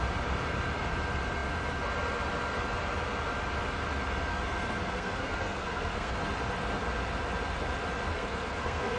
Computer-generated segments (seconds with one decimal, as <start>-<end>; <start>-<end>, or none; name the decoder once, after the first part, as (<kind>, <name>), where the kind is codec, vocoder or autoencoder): 4.3-6.2 (codec, SNAC); 8.1-9.0